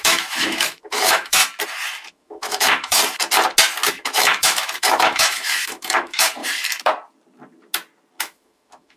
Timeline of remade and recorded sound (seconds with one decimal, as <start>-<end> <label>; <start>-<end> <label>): 0.0-1.4 remade; 1.4-2.1 recorded; 2.1-3.0 remade; 3.0-3.9 recorded; 3.9-6.4 remade; 6.4-8.2 recorded; 8.2-9.0 remade

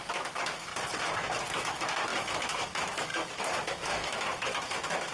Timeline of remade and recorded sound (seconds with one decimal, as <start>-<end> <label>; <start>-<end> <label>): 0.0-0.7 remade; 0.7-1.5 recorded; 1.5-5.1 remade

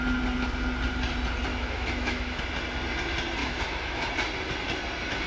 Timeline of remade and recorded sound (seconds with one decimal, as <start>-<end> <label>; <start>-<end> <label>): 0.0-1.5 recorded; 1.5-2.4 remade; 2.4-3.4 recorded; 3.4-4.1 remade; 4.1-5.3 recorded

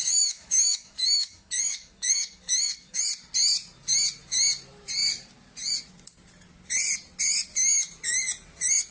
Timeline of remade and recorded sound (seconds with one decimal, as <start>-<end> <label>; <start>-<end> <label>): 0.0-3.0 remade; 3.0-8.9 recorded

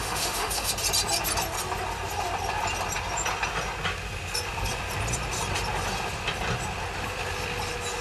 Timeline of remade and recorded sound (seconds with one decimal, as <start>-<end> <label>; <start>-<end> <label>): 0.0-0.7 remade; 0.7-8.0 recorded

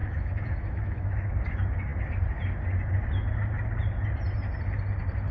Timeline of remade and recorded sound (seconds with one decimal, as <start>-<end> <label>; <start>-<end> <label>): 0.0-1.3 remade; 1.3-5.3 recorded

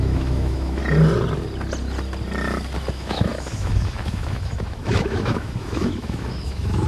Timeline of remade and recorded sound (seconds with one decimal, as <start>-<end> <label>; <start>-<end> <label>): 0.0-0.8 remade; 0.8-2.9 recorded; 2.9-6.9 remade